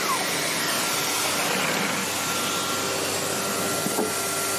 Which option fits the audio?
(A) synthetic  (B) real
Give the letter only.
B